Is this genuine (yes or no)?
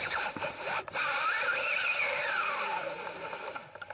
no